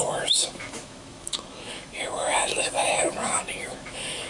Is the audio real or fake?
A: fake